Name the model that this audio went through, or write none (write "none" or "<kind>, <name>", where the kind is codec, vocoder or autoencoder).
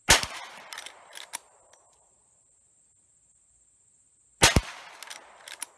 none